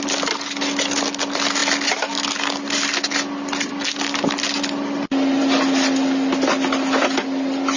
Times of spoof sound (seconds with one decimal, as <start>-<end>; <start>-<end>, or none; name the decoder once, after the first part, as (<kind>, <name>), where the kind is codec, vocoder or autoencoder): none